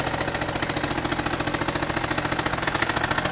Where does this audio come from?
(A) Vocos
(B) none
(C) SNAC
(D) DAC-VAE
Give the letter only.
B